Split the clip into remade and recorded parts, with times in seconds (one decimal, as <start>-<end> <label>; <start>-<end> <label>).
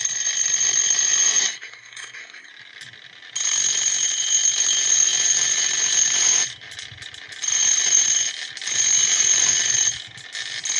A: 0.0-1.4 recorded; 1.4-2.5 remade; 2.5-10.8 recorded